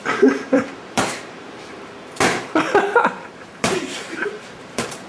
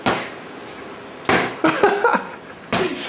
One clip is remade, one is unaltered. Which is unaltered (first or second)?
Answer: second